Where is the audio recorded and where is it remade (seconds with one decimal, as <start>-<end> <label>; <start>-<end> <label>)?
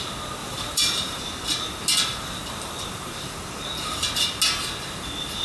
0.0-0.4 recorded; 0.4-1.2 remade; 1.2-2.1 recorded; 2.1-3.4 remade; 3.4-5.4 recorded